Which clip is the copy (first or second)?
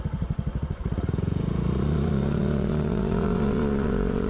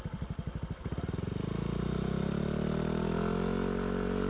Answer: first